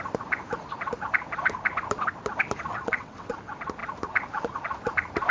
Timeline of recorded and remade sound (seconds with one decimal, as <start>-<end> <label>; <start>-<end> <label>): 0.0-2.7 recorded; 2.7-3.3 remade; 3.3-5.3 recorded